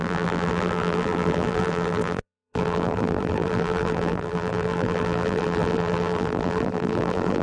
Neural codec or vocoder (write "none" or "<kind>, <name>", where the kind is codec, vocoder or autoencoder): vocoder, BigVGAN v2